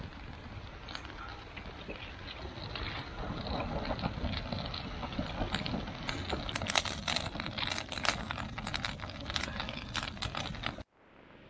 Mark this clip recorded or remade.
recorded